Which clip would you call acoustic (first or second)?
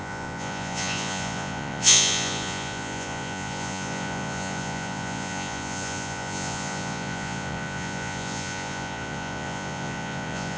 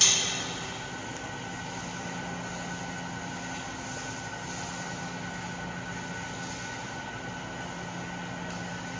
second